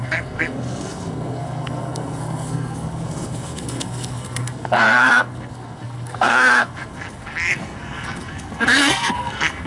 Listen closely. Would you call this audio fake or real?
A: fake